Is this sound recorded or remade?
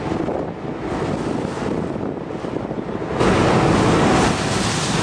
recorded